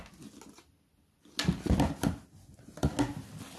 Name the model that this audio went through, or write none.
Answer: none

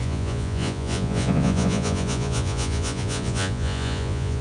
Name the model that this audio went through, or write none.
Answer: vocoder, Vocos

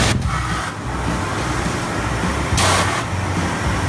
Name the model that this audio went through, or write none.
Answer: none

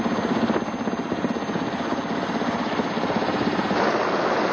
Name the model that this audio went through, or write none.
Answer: none